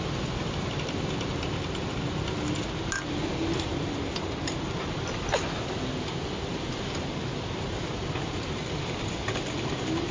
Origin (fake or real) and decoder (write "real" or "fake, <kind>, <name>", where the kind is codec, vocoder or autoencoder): real